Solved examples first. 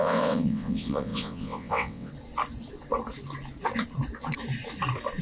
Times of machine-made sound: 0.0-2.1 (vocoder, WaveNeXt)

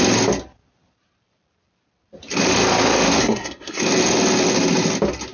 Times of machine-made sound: 3.2-3.8 (codec, SNAC)

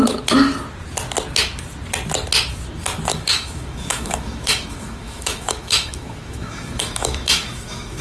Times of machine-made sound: 3.1-8.0 (autoencoder, DAC-VAE)

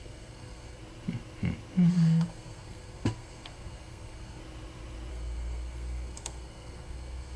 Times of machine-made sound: 0.0-0.8 (codec, SNAC); 1.9-4.4; 5.1-7.4

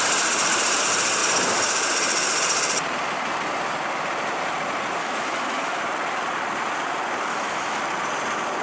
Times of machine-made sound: 5.0-5.8 (autoencoder, DAC-VAE); 7.3-7.8

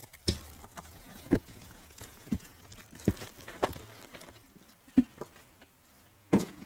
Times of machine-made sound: 0.8-2.7 (vocoder, Vocos); 6.1-6.7

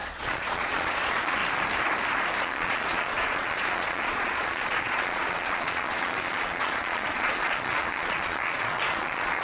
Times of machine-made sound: 0.0-1.4 (vocoder, Vocos); 2.4-9.4